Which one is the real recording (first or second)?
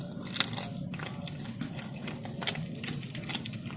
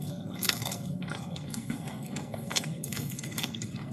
first